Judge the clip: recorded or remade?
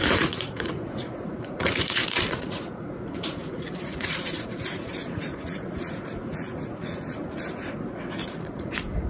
remade